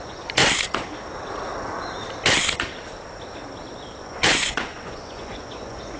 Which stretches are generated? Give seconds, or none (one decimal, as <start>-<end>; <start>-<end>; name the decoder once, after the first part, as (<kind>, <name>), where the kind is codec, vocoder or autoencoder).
0.0-0.4 (vocoder, Vocos); 4.0-6.0